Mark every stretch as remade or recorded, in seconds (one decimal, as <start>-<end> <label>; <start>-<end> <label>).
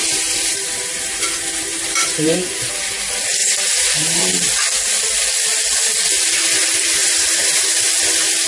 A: 0.0-2.9 remade; 2.9-3.4 recorded; 3.4-4.2 remade; 4.2-7.0 recorded; 7.0-7.6 remade; 7.6-8.5 recorded